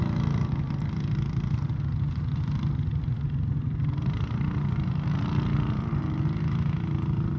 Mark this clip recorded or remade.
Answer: recorded